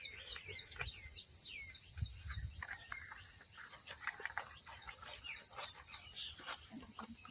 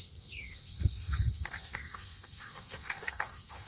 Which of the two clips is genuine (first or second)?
first